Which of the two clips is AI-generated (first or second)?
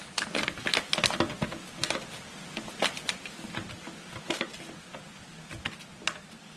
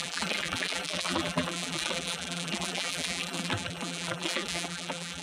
second